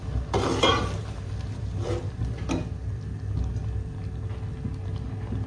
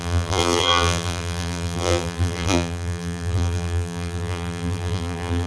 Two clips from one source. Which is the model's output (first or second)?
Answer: second